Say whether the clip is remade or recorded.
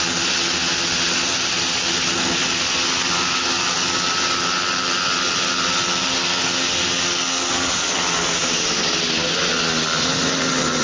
recorded